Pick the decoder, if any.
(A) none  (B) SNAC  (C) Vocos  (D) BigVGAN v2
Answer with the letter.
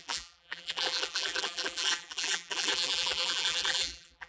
D